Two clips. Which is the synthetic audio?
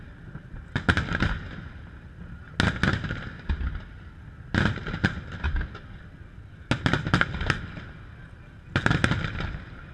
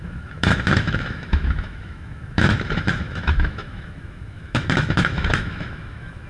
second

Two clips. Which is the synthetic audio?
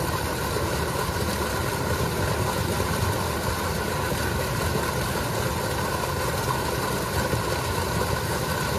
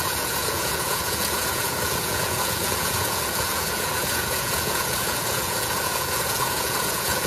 second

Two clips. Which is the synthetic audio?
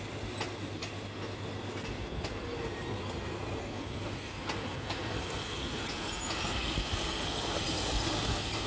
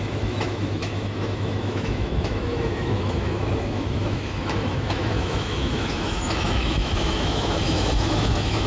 second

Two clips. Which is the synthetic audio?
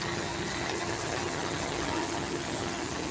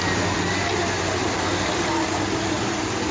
first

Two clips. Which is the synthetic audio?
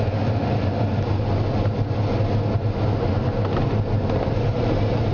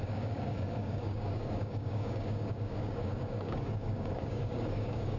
second